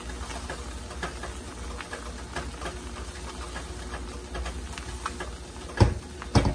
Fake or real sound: real